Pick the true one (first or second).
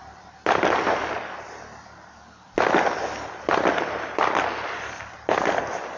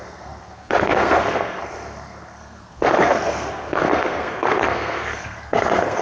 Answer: first